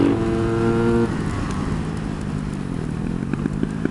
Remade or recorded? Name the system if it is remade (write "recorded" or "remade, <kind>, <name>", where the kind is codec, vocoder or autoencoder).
recorded